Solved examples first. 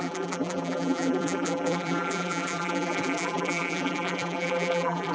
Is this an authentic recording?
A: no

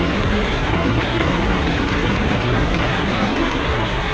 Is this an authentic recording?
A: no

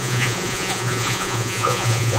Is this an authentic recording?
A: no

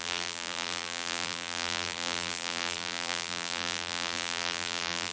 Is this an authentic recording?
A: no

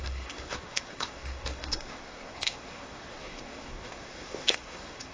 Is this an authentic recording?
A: no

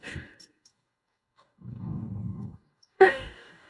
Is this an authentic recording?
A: no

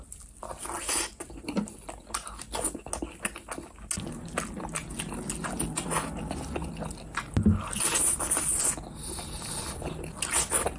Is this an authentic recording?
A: yes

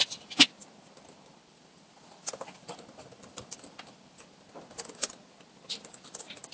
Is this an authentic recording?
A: yes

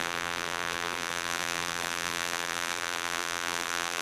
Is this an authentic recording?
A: no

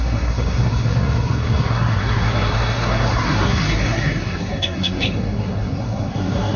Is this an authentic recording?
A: no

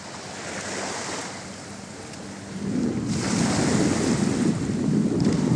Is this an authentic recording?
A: yes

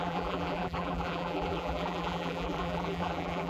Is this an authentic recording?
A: no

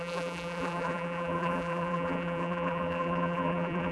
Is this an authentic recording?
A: no